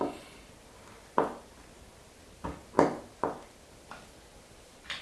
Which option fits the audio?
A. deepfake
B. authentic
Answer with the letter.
B